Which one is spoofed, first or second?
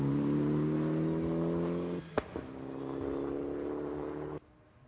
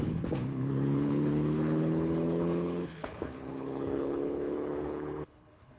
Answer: second